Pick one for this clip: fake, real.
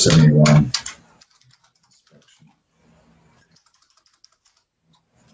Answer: real